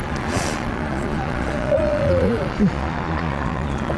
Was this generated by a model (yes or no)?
yes